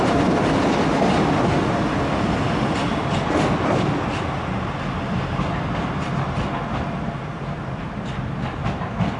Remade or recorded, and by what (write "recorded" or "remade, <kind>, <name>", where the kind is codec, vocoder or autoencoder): recorded